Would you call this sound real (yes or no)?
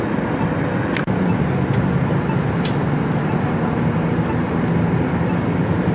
yes